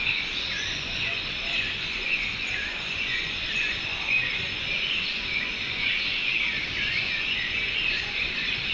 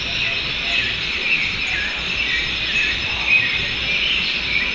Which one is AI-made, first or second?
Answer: first